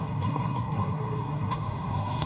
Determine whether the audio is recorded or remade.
remade